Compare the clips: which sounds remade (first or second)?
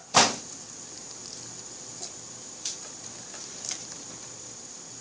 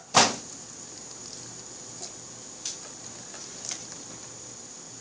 first